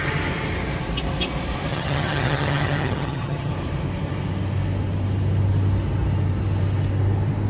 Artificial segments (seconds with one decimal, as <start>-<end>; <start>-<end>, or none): 1.7-3.5